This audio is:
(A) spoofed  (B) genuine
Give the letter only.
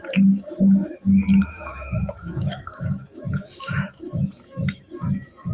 A